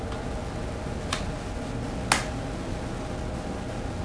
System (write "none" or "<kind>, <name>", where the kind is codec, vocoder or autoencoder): none